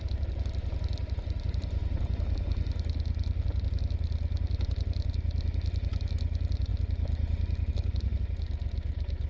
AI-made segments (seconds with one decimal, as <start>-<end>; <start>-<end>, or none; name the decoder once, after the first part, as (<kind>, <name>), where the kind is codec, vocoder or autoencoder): none